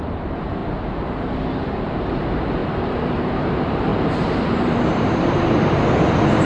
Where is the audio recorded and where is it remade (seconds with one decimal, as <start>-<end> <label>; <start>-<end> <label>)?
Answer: 0.0-6.4 remade